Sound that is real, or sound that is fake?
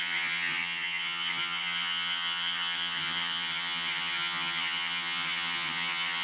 fake